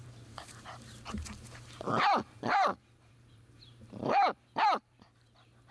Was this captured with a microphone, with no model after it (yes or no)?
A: no